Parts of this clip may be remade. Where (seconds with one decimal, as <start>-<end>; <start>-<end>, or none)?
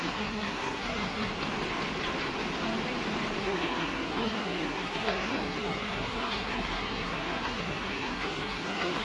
0.0-1.3; 3.4-9.0